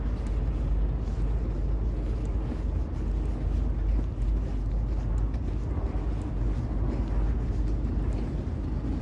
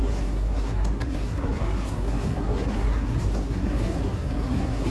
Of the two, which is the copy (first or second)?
second